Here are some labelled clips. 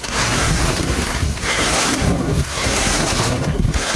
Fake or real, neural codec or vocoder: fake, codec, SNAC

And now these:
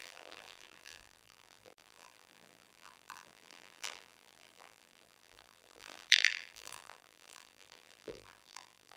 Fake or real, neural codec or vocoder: fake, vocoder, BigVGAN v2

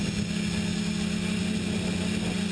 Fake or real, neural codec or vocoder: real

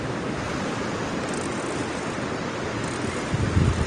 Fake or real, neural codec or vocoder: real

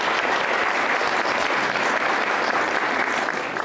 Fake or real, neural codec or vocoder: real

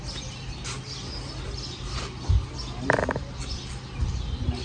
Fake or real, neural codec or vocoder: real